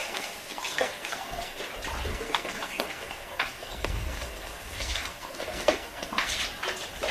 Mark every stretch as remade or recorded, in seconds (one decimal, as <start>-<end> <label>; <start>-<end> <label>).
0.0-1.6 remade; 1.6-2.1 recorded; 2.1-6.4 remade; 6.4-7.1 recorded